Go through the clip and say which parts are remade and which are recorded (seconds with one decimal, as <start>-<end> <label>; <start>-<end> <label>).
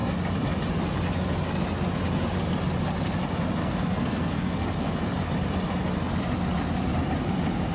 0.0-3.6 recorded; 3.6-5.0 remade; 5.0-7.7 recorded